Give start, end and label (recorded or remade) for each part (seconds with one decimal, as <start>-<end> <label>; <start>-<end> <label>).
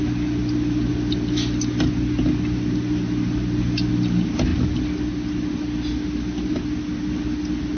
0.0-7.8 recorded